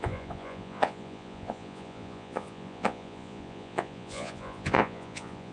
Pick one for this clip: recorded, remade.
remade